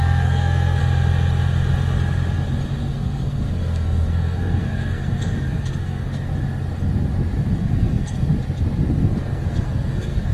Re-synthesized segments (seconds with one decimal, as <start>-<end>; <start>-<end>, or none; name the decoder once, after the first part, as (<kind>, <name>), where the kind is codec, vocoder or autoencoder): 0.0-0.8 (codec, SNAC); 2.9-6.3; 7.6-8.3; 8.9-10.3